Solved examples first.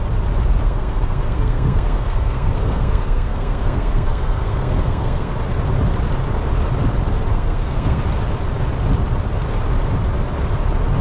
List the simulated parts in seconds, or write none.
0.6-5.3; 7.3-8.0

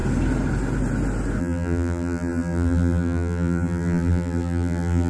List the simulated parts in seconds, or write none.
1.4-5.1

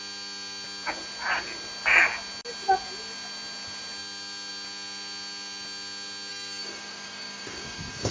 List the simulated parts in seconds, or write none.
6.3-8.1